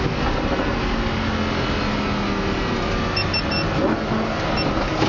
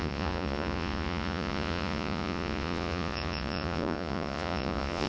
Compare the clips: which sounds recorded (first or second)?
first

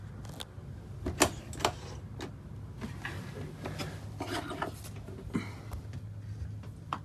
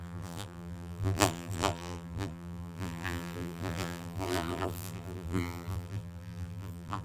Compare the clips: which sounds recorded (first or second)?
first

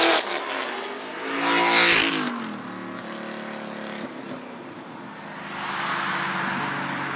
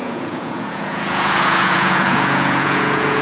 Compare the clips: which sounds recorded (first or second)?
first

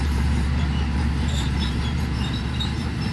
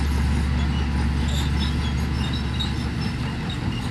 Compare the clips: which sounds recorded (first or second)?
second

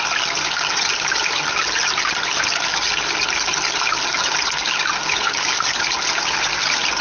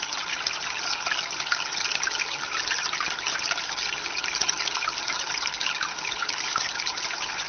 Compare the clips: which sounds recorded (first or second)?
first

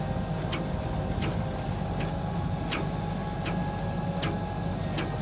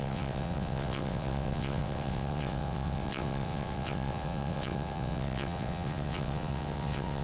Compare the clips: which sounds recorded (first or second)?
first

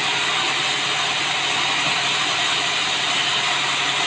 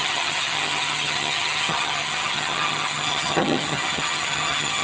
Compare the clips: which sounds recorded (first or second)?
first